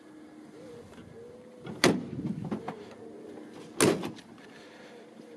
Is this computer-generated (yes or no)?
no